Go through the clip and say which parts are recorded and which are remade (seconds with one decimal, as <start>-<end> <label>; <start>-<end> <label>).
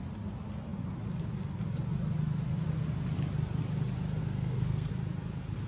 0.0-4.2 recorded; 4.2-4.9 remade; 4.9-5.7 recorded